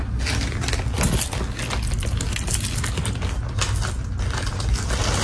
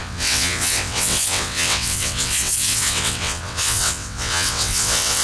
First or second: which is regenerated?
second